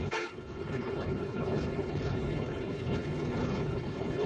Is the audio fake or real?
fake